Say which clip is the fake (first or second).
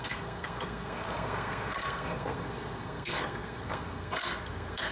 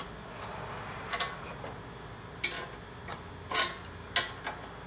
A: first